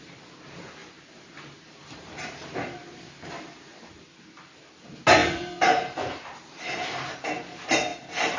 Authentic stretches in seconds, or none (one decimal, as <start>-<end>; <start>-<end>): 0.0-0.8; 4.0-5.2; 7.2-7.9